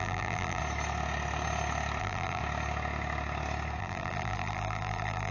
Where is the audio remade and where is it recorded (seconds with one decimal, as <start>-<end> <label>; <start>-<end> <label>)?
0.0-0.6 remade; 0.6-2.0 recorded; 2.0-2.4 remade; 2.4-3.8 recorded; 3.8-5.3 remade